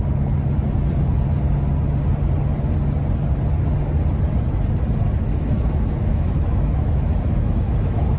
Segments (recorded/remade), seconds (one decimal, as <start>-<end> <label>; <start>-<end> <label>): 0.0-5.3 recorded; 5.3-8.2 remade